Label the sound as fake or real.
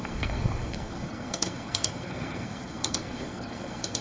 fake